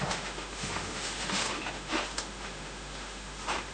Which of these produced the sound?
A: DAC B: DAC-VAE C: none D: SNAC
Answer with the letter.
B